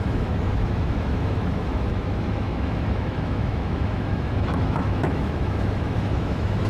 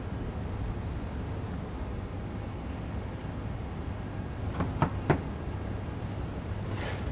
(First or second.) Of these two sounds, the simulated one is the first